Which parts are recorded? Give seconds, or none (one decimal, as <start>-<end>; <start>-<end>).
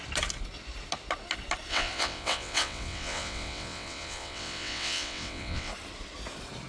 0.0-1.7; 5.7-6.7